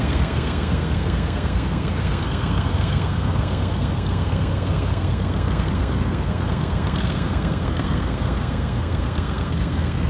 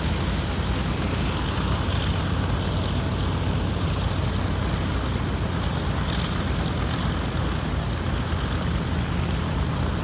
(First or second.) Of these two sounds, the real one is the second